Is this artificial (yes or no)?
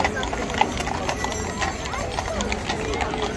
no